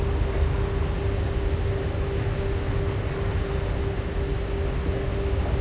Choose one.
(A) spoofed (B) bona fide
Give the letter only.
B